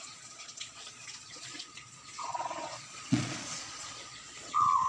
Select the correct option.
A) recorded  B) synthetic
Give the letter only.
B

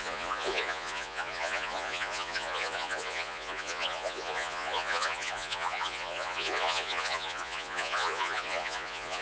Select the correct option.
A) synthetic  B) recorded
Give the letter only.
A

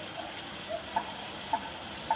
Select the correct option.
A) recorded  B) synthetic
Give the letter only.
A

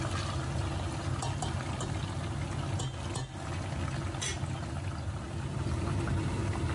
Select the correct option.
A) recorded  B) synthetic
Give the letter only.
A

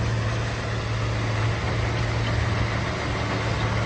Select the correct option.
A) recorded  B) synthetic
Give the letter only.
A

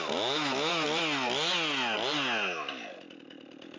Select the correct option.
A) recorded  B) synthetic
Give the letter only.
A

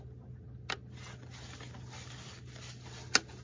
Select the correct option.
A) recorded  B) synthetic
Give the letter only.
A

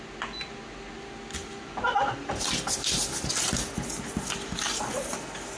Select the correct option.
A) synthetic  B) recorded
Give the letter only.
B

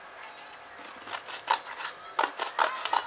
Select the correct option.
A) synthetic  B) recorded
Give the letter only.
B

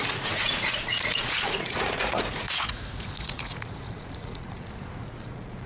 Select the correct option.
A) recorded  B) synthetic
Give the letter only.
B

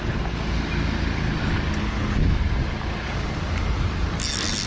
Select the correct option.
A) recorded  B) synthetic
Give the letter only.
A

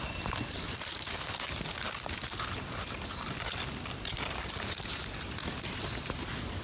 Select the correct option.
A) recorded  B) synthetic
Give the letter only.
A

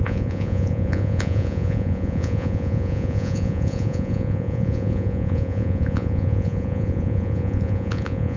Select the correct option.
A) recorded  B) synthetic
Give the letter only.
B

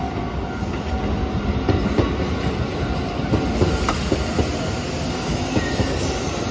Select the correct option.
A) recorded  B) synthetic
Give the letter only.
A